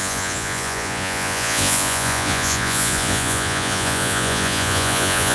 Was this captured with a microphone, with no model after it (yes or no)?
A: no